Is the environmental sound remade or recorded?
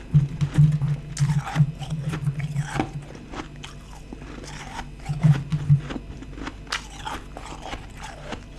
recorded